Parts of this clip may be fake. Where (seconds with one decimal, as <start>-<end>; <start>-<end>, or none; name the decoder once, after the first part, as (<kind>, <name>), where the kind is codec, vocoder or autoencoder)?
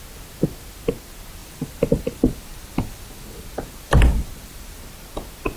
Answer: 1.4-4.8 (vocoder, BigVGAN v2)